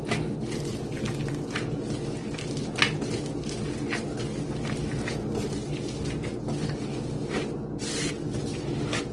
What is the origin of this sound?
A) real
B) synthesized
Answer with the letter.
A